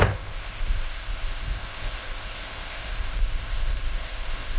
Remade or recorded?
remade